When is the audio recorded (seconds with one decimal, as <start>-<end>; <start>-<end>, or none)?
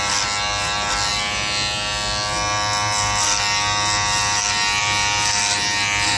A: 0.0-6.2